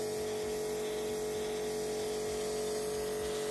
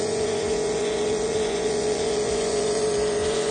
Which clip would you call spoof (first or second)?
second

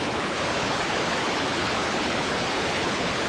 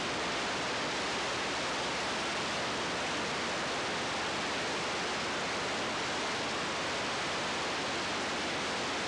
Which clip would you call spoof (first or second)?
first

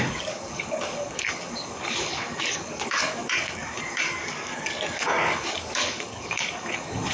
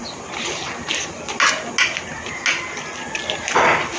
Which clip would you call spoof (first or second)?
first